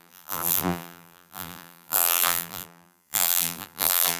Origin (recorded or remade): remade